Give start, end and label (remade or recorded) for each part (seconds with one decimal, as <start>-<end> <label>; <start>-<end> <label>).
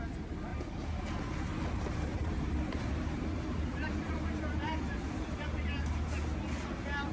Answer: 0.0-0.5 recorded; 0.5-1.0 remade; 1.0-2.1 recorded; 2.1-4.1 remade; 4.1-7.1 recorded